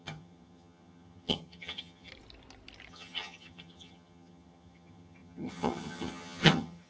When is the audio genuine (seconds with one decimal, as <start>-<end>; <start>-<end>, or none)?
2.1-2.9